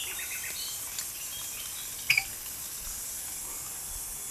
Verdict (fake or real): real